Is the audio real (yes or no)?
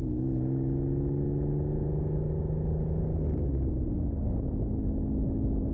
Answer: yes